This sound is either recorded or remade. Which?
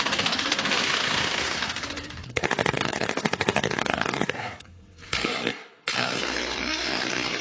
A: remade